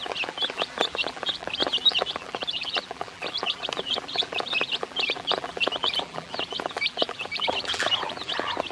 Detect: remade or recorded remade